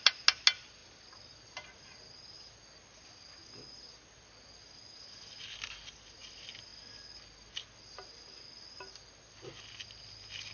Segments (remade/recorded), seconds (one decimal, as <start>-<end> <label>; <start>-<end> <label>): 0.0-10.5 recorded